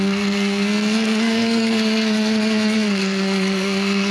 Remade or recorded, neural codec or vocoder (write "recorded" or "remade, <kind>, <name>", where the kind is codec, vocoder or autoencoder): remade, codec, SNAC